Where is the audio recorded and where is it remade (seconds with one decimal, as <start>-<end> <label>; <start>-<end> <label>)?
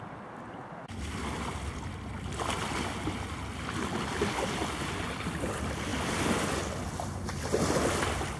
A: 0.0-8.4 recorded